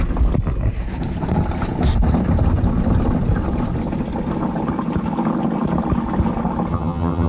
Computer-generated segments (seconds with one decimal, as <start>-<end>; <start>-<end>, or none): 6.7-7.3